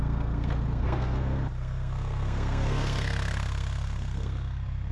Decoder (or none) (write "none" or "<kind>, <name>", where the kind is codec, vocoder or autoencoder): codec, SNAC